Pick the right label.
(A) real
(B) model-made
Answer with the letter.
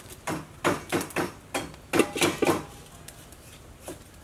A